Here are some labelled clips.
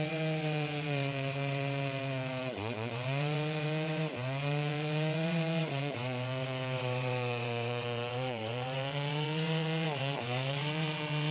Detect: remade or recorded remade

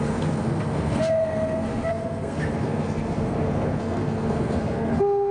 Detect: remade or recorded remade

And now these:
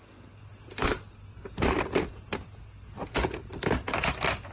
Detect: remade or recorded recorded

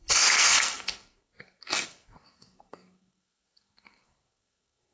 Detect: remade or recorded remade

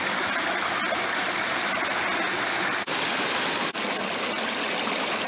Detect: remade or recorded recorded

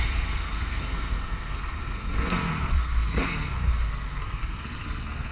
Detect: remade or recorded remade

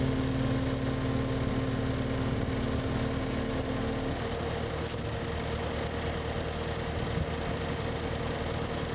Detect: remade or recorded recorded